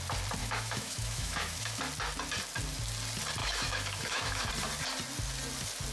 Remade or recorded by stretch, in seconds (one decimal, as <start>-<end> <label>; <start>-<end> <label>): 0.0-0.4 recorded; 0.4-1.8 remade; 1.8-3.4 recorded; 3.4-4.5 remade; 4.5-5.9 recorded